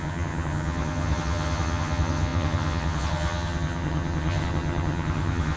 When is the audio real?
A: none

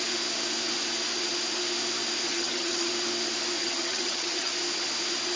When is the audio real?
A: 0.0-2.3; 2.9-3.6; 4.5-5.4